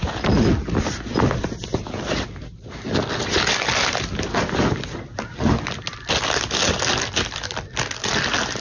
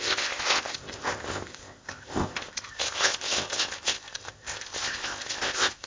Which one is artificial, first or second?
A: second